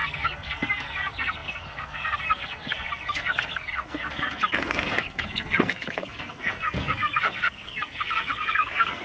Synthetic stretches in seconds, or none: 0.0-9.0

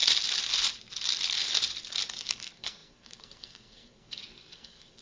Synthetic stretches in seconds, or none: 2.2-5.0